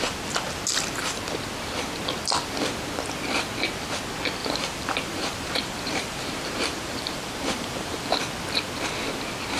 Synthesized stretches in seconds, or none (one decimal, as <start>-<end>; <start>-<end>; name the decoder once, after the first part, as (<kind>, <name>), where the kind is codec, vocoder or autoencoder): 4.4-8.2 (vocoder, BigVGAN v2)